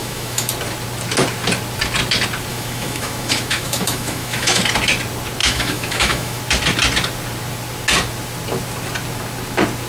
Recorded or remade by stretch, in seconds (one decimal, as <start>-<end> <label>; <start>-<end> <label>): 0.0-0.5 remade; 0.5-2.5 recorded; 2.5-4.6 remade; 4.6-5.4 recorded; 5.4-6.4 remade; 6.4-9.9 recorded